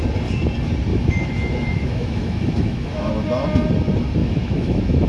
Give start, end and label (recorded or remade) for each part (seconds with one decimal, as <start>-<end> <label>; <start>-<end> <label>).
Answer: 0.0-0.9 recorded; 0.9-3.1 remade; 3.1-4.2 recorded; 4.2-5.1 remade